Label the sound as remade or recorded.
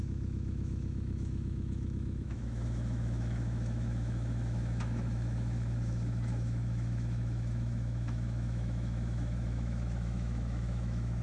remade